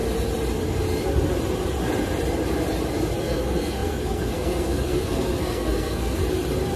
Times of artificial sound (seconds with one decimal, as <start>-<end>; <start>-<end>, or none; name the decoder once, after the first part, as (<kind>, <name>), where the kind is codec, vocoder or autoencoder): 3.2-6.2 (codec, SNAC)